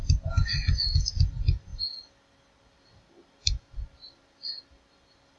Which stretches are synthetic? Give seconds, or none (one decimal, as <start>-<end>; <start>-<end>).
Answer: none